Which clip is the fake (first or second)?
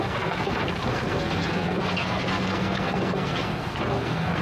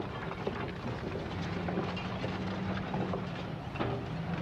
first